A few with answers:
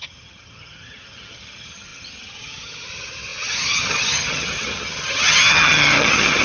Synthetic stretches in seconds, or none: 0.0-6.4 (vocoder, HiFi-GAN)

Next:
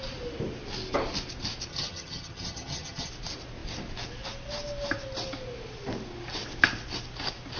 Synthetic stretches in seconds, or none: 1.7-3.1 (vocoder, HiFi-GAN)

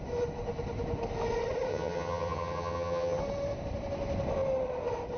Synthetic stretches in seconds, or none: 1.7-3.2 (vocoder, HiFi-GAN)

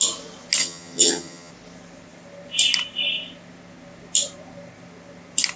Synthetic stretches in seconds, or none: 0.6-1.5 (vocoder, HiFi-GAN)

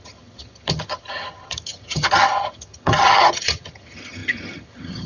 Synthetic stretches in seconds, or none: 0.0-5.1 (vocoder, HiFi-GAN)

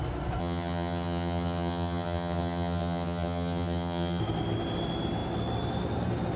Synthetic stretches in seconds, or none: 0.4-4.2 (vocoder, HiFi-GAN)